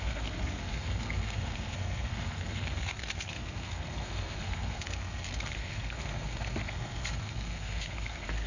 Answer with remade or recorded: remade